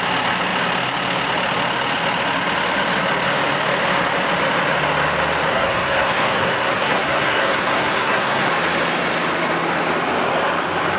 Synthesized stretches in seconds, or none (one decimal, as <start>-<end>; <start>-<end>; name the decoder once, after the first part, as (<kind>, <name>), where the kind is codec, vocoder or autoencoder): 5.5-8.5 (codec, SNAC)